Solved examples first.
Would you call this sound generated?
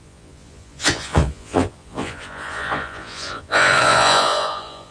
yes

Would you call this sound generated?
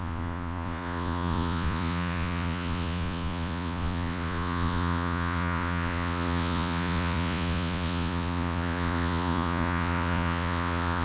yes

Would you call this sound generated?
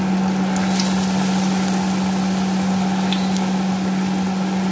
no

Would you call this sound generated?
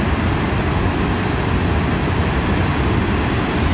no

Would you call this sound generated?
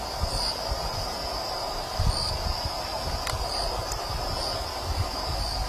no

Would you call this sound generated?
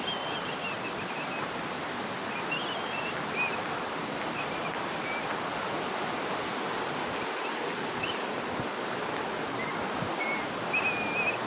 no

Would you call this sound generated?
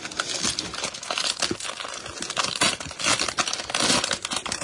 no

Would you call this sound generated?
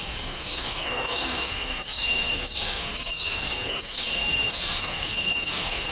yes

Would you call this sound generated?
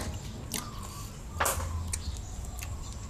no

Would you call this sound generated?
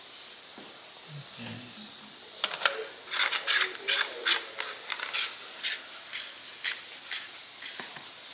no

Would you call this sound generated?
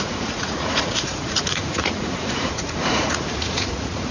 yes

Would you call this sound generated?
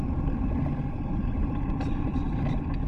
no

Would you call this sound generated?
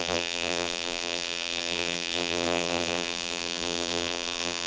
yes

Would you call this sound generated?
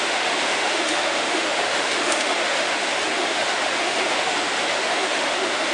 yes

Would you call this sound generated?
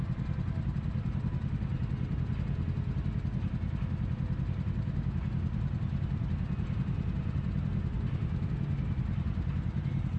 no